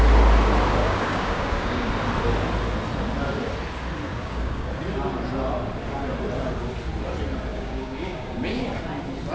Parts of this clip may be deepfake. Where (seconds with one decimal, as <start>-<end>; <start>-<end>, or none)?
0.8-1.9; 4.1-4.7; 7.5-8.7